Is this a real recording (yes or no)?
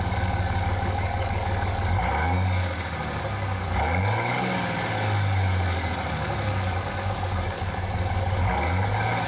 no